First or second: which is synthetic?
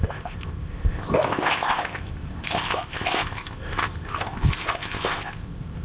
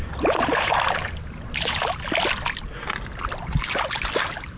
first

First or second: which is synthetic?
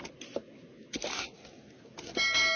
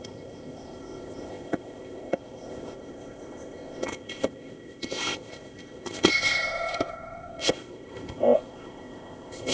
second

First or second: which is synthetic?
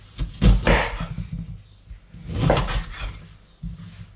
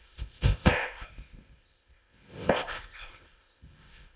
second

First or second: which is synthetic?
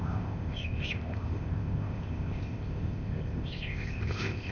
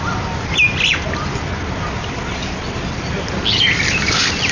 first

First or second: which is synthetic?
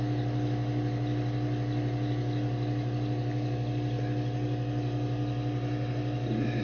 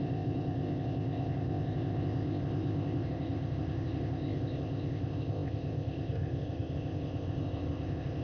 second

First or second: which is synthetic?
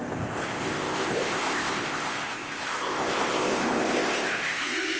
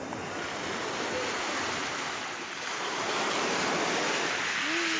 first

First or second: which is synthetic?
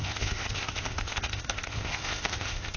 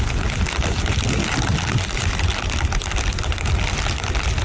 first